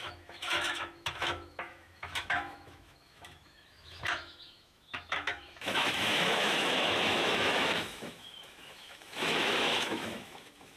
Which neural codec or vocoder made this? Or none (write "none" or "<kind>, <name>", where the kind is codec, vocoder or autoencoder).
autoencoder, DAC-VAE